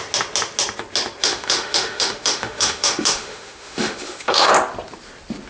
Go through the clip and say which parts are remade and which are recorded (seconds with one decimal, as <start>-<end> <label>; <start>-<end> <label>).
0.0-1.2 recorded; 1.2-4.5 remade; 4.5-5.5 recorded